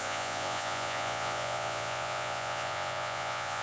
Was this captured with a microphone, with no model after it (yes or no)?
no